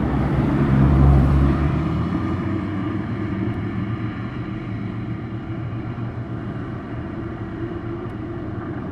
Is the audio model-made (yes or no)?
yes